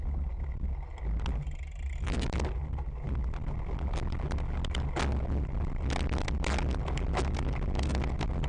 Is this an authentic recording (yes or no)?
yes